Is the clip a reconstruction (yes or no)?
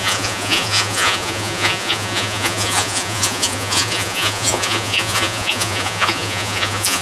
yes